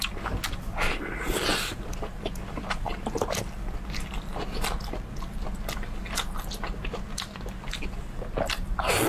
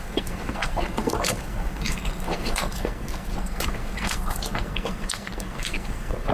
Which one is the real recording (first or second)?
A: first